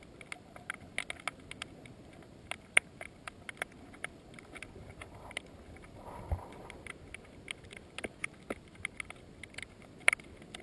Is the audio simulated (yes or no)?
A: no